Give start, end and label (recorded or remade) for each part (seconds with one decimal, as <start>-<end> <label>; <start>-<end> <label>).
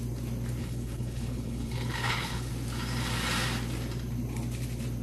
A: 0.0-0.6 recorded; 0.6-2.5 remade; 2.5-5.0 recorded